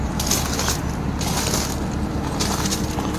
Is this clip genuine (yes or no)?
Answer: yes